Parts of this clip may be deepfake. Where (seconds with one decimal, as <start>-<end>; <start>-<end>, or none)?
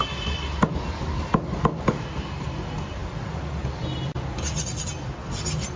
none